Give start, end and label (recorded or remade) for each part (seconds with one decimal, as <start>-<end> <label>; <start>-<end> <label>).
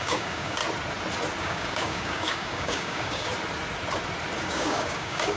0.0-0.6 remade; 0.6-1.4 recorded; 1.4-3.3 remade; 3.3-4.4 recorded; 4.4-5.4 remade